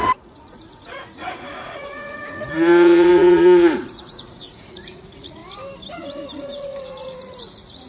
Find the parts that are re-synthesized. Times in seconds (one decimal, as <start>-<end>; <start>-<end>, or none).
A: 0.0-5.4; 5.9-7.9